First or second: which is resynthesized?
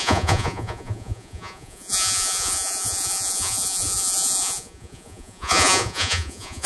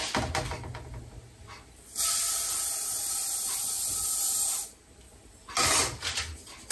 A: first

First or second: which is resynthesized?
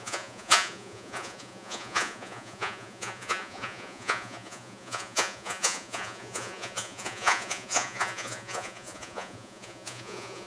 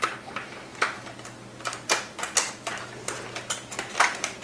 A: first